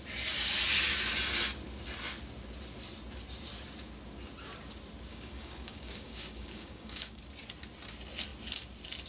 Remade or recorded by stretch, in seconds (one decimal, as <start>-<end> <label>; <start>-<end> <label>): 0.0-5.1 recorded; 5.1-7.2 remade; 7.2-9.1 recorded